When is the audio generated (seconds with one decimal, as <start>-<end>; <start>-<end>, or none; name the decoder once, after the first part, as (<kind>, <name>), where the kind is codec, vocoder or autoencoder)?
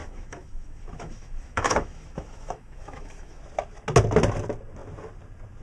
0.0-3.4 (autoencoder, DAC-VAE)